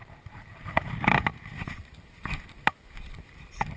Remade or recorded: remade